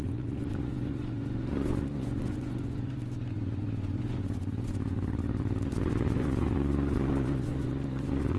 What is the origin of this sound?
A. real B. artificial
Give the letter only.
B